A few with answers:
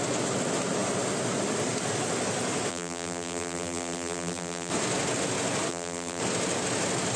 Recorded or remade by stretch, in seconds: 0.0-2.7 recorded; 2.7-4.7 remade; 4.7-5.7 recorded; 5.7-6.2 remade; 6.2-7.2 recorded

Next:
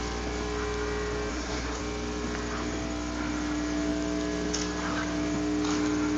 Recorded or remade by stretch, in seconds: 0.0-1.3 recorded; 1.3-1.8 remade; 1.8-6.2 recorded